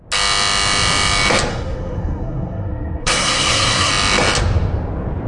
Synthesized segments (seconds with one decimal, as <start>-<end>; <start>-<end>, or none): 1.5-3.9